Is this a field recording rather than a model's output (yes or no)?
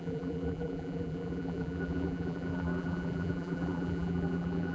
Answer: no